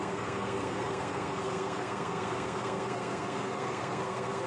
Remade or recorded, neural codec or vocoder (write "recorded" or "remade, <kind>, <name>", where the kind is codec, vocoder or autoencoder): remade, codec, SNAC